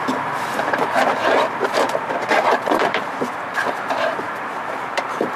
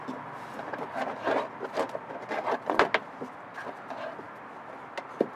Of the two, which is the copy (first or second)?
first